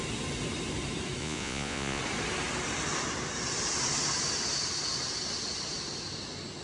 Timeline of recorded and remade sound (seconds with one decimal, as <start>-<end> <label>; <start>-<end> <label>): 0.0-1.2 recorded; 1.2-2.0 remade; 2.0-6.6 recorded